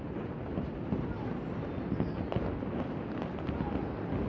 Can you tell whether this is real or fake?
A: real